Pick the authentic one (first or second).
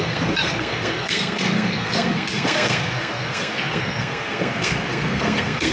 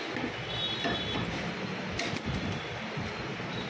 second